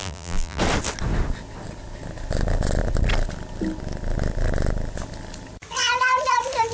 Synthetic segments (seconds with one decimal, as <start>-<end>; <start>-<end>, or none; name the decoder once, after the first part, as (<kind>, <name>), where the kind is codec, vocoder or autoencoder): 0.0-0.6 (vocoder, BigVGAN v2)